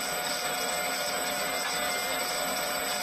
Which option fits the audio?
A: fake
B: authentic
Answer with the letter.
B